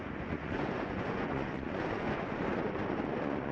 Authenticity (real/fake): fake